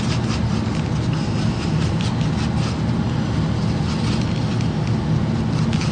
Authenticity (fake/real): real